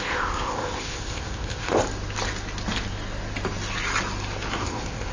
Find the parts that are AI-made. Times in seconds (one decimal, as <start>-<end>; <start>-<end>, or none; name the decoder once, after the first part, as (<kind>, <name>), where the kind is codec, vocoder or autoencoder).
0.0-1.8 (codec, ZipCodec); 4.6-5.1